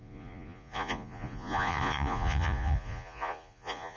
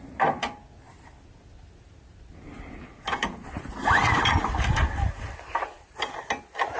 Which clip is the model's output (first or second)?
first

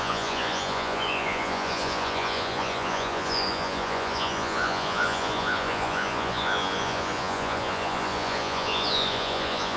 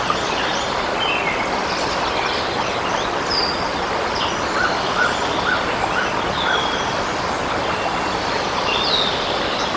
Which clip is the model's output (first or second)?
first